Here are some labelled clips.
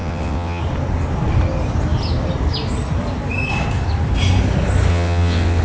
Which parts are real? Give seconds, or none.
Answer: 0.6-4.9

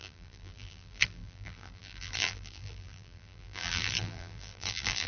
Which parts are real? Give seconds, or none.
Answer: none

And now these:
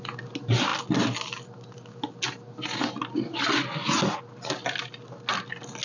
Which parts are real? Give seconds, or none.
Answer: 0.0-5.8

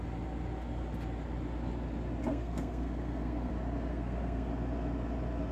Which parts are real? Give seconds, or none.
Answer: 0.0-2.3; 3.5-3.9; 4.5-5.5